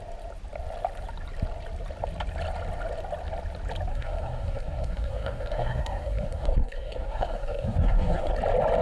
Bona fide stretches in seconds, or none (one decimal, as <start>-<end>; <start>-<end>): 0.0-3.9; 8.3-8.8